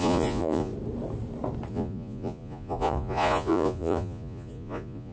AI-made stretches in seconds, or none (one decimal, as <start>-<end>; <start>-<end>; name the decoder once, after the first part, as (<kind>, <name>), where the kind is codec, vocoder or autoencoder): 0.0-0.7 (vocoder, Vocos); 1.7-5.1